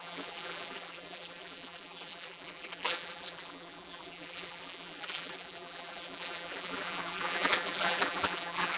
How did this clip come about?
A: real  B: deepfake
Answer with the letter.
B